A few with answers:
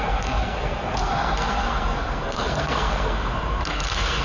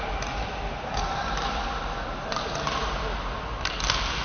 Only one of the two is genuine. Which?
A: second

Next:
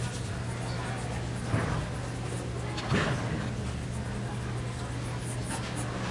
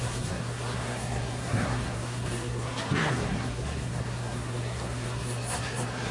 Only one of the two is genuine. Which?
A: first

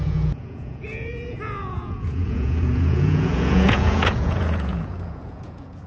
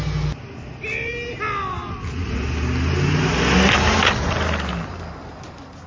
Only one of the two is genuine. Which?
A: second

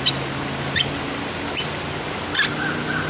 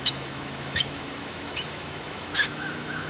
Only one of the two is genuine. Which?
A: first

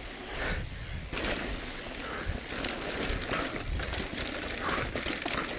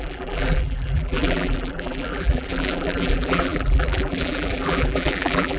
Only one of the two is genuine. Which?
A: first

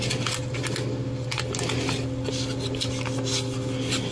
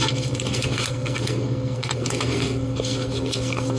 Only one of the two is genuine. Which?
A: first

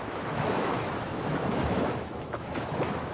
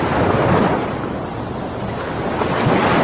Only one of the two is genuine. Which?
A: second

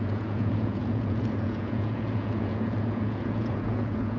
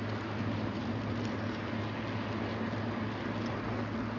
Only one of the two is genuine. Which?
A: second